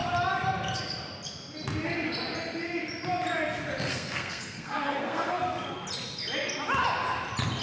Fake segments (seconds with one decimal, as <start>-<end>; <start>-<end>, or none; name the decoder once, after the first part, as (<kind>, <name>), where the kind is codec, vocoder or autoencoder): 3.9-5.4 (codec, SNAC)